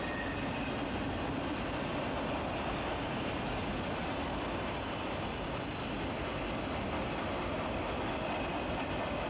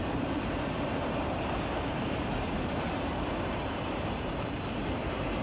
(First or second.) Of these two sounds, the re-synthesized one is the second